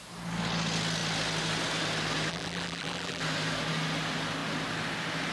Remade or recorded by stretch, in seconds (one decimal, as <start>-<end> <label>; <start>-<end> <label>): 0.0-2.3 recorded; 2.3-3.2 remade; 3.2-5.3 recorded